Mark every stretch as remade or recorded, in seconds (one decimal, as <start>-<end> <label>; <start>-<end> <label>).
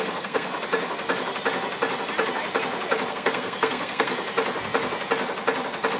0.0-0.5 remade; 0.5-3.1 recorded; 3.1-4.1 remade; 4.1-6.0 recorded